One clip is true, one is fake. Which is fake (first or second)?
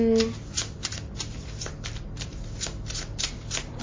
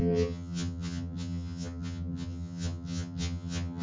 second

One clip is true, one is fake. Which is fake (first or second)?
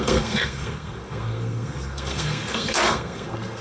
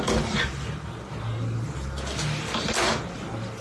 first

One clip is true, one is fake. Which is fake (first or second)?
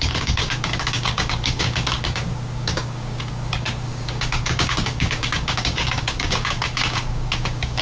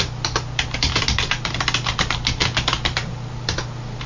first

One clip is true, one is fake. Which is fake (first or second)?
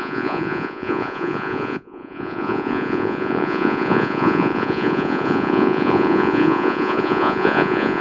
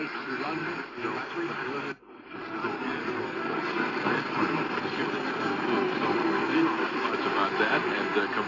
first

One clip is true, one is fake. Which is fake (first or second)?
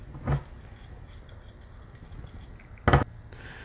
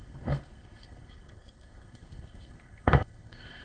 second